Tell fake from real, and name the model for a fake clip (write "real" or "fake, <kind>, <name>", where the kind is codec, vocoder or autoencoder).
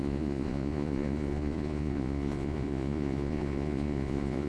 fake, vocoder, Vocos